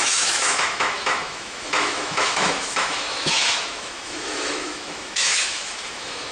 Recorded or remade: remade